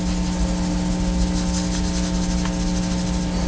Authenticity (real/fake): real